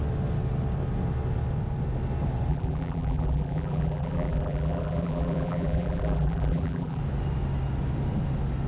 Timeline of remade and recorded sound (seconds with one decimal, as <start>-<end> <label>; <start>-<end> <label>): 0.0-2.5 recorded; 2.5-7.0 remade; 7.0-8.7 recorded